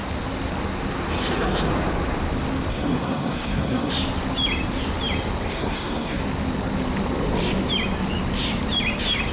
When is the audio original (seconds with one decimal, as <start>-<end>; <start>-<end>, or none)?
0.0-2.7; 3.9-5.5; 6.2-9.3